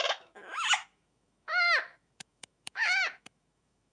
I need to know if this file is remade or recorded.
remade